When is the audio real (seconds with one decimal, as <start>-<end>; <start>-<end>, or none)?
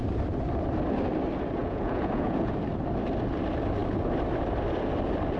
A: 0.0-1.6; 2.5-5.4